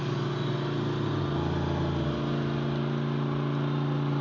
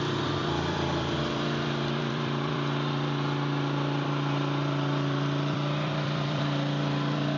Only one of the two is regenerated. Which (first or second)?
second